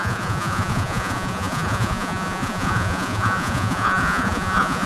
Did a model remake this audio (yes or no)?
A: yes